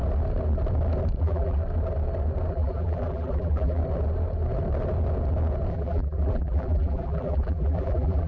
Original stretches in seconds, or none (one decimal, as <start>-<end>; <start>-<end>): 0.0-1.2; 1.6-2.5; 3.8-5.7